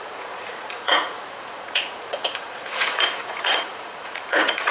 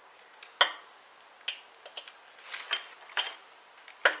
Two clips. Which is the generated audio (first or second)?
first